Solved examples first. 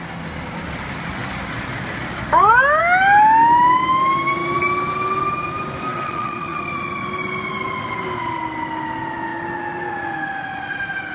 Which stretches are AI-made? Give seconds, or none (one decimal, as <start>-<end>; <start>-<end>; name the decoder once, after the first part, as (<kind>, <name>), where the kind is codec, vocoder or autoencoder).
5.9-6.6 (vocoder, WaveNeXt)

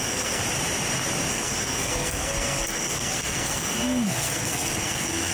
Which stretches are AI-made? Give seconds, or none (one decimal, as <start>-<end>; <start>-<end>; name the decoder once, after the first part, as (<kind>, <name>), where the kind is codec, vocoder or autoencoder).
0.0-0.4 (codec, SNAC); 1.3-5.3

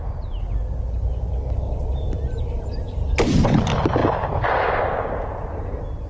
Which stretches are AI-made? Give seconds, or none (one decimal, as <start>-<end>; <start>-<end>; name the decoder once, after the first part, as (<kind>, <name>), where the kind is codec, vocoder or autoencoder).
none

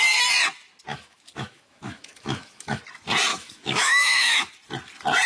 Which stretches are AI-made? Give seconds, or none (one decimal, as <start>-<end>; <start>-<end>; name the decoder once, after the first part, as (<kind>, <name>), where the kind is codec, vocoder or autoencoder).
0.9-2.8 (autoencoder, DAC-VAE); 3.3-4.5